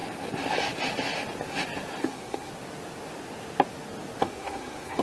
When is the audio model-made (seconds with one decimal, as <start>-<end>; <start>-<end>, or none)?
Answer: 2.0-2.5; 4.2-5.0